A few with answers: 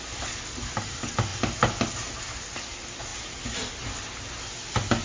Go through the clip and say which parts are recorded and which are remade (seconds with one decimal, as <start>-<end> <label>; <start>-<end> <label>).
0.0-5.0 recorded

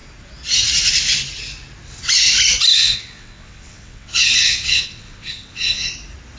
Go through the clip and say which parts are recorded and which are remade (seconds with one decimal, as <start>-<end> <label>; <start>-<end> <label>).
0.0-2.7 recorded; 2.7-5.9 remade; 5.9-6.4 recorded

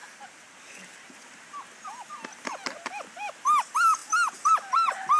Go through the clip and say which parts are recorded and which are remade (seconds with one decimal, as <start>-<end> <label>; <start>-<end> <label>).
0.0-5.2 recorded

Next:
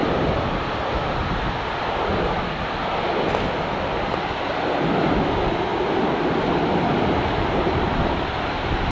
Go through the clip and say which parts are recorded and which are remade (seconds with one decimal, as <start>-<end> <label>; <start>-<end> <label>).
0.0-1.2 recorded; 1.2-2.8 remade; 2.8-5.7 recorded; 5.7-8.2 remade; 8.2-8.9 recorded